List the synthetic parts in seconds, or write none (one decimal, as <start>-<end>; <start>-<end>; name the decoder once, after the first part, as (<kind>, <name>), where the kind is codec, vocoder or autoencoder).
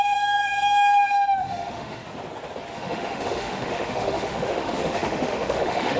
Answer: 0.0-2.0 (autoencoder, DAC-VAE); 2.7-6.0